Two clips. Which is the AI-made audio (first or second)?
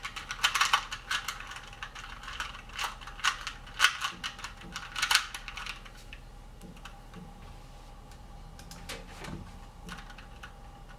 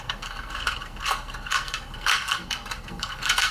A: second